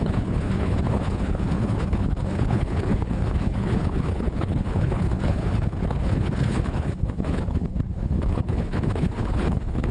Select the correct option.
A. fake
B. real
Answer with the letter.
A